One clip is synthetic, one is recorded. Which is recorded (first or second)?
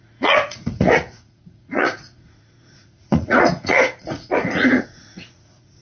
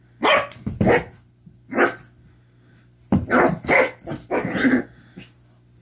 second